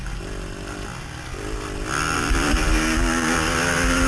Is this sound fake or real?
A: real